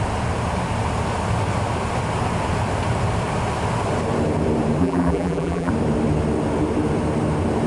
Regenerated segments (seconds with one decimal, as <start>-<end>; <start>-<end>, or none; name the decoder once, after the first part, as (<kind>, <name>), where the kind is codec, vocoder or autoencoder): 4.8-5.7 (vocoder, BigVGAN v2)